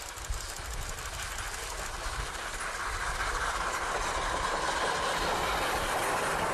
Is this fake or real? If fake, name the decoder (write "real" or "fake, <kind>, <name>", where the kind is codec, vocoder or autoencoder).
real